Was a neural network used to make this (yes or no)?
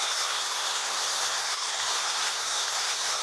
yes